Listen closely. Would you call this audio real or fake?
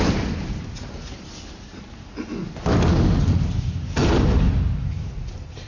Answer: real